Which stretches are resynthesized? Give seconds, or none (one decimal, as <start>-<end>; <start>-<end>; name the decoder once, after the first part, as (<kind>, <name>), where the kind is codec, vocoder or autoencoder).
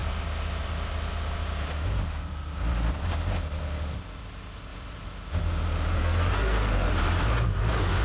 6.0-6.9 (codec, SNAC)